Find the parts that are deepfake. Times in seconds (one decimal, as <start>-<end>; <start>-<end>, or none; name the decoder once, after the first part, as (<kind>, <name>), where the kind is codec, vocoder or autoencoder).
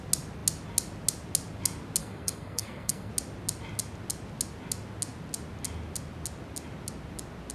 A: 2.0-3.1 (codec, SNAC)